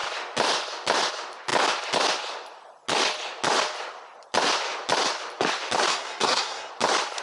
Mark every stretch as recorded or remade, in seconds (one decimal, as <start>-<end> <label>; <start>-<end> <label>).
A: 0.0-5.9 recorded; 5.9-6.7 remade; 6.7-7.2 recorded